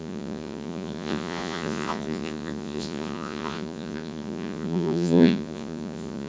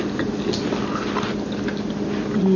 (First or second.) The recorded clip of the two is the second